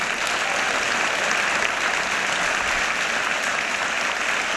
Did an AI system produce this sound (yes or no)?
no